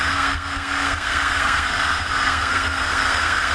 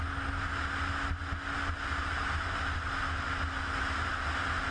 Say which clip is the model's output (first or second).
first